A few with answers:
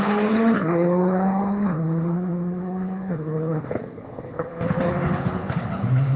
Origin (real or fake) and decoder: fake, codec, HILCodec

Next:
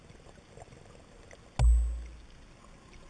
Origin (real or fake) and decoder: real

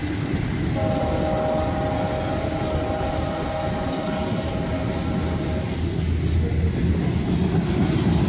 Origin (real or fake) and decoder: real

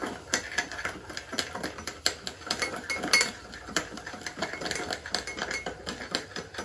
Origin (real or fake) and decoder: real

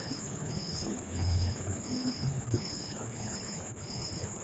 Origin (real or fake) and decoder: fake, codec, HILCodec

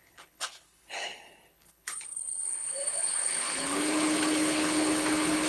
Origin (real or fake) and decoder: fake, codec, HILCodec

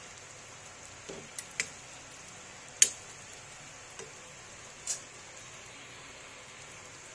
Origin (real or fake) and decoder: real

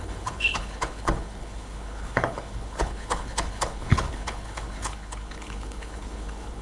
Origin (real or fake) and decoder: fake, codec, HILCodec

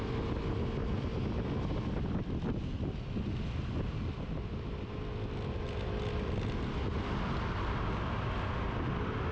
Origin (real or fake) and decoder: real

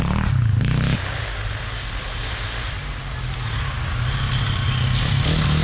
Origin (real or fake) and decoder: real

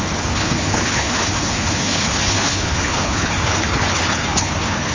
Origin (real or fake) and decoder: fake, codec, HILCodec